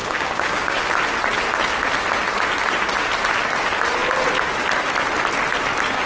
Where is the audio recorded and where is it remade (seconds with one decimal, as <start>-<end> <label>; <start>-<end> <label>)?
0.0-0.8 remade; 0.8-6.1 recorded